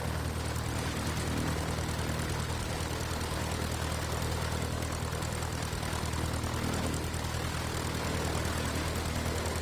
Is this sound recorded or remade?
recorded